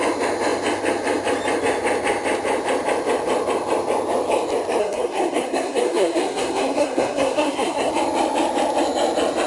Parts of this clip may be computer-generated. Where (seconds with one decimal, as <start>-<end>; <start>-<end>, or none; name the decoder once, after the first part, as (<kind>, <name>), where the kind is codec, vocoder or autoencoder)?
4.8-7.9 (codec, SNAC)